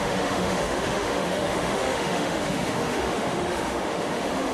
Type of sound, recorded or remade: remade